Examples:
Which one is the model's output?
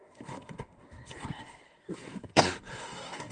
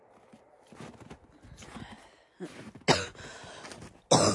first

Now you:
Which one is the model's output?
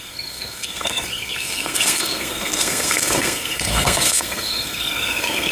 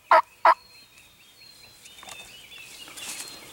first